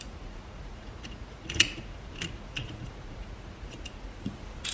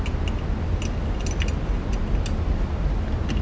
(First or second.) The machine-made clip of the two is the first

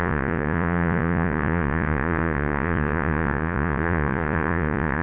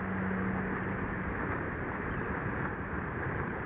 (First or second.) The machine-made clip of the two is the first